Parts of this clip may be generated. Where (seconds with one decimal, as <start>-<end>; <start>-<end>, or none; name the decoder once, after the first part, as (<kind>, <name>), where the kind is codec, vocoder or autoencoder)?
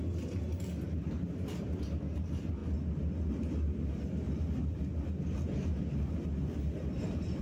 none